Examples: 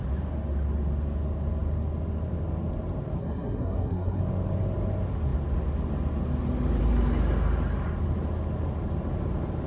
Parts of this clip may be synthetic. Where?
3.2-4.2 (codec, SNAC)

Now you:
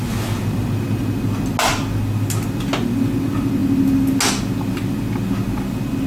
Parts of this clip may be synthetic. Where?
none

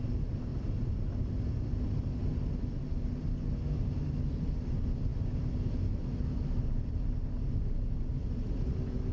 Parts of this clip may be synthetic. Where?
none

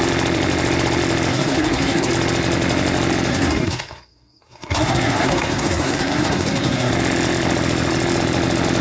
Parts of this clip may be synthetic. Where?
1.3-2.1 (codec, SNAC); 3.3-6.9